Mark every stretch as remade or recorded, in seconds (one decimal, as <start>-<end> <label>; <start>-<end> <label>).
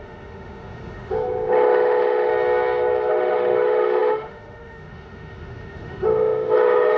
0.0-2.3 remade; 2.3-3.1 recorded; 3.1-7.0 remade